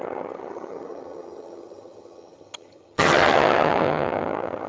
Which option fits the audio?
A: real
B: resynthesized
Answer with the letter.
B